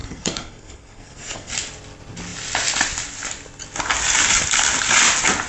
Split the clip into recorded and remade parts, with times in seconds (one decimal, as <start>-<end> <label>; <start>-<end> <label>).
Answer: 0.0-1.5 remade; 1.5-5.5 recorded

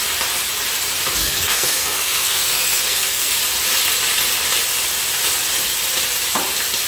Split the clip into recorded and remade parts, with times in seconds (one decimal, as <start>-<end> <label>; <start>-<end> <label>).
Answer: 0.0-1.2 recorded; 1.2-3.4 remade; 3.4-6.9 recorded